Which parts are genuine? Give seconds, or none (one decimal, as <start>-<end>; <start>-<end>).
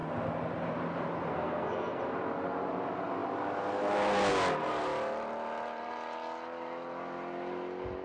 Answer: 0.0-1.3; 2.0-8.0